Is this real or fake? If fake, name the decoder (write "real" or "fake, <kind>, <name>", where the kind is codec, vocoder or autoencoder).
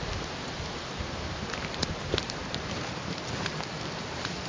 fake, vocoder, BigVGAN v2